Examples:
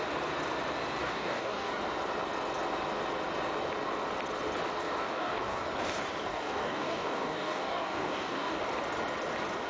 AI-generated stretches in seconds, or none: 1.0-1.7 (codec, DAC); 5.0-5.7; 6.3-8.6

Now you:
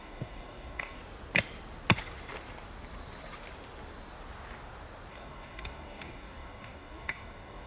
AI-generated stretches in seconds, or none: 0.0-1.0 (codec, DAC); 5.1-7.7

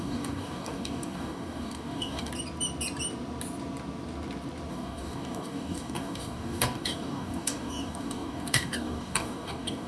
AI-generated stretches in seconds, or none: 0.0-2.3 (codec, DAC); 4.7-9.9

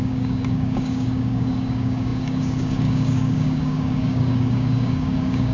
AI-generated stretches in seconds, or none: 0.0-5.5 (codec, DAC)

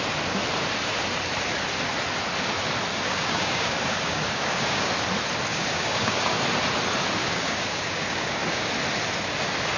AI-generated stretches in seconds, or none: 2.9-4.9 (codec, DAC); 5.5-6.4; 7.2-8.7

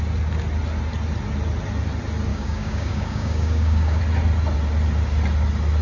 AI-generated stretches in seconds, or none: 2.3-4.0 (codec, DAC)

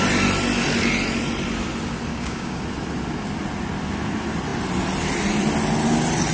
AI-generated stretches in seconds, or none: 2.1-2.6 (codec, DAC)

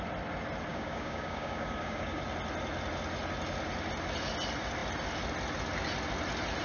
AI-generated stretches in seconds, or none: 0.7-2.2 (codec, DAC)